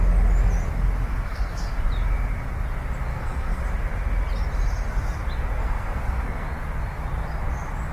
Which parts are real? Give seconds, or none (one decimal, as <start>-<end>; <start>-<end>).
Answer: 0.0-1.1; 1.8-3.1; 3.6-5.6; 6.5-7.9